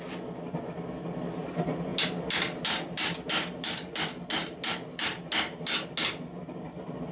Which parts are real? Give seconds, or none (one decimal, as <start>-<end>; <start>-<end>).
0.0-7.1